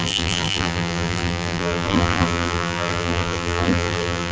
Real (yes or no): no